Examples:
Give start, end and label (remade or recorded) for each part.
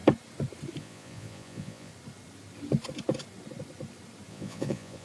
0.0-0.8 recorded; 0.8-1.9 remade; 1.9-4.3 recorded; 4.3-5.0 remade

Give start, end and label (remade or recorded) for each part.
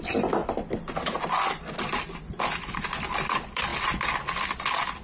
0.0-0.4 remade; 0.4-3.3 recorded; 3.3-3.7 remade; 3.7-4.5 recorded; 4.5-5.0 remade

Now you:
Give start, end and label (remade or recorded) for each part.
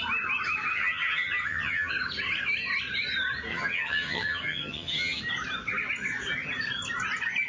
0.0-0.7 recorded; 0.7-1.9 remade; 1.9-3.5 recorded; 3.5-5.2 remade; 5.2-7.5 recorded